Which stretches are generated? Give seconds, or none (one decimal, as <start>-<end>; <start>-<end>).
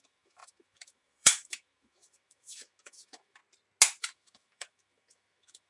0.0-3.4; 4.0-5.7